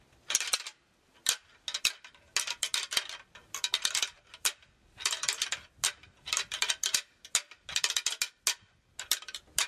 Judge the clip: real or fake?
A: real